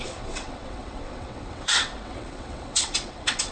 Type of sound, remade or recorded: remade